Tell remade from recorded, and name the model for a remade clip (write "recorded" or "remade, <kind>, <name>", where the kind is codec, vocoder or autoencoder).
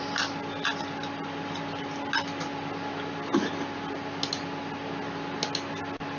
recorded